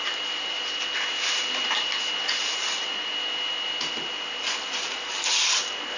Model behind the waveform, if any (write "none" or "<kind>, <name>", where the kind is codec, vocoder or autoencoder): none